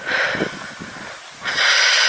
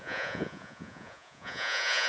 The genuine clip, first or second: first